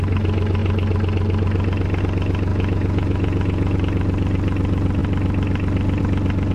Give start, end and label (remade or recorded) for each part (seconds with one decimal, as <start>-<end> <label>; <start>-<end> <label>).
0.0-2.5 recorded; 2.5-3.8 remade; 3.8-6.5 recorded